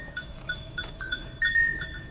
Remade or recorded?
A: remade